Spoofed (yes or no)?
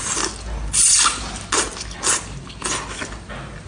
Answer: no